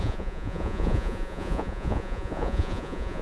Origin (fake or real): fake